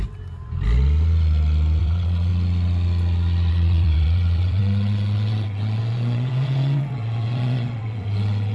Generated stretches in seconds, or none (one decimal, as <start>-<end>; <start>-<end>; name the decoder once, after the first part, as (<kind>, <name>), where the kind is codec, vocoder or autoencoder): 1.8-2.3 (vocoder, WaveNeXt); 3.5-8.5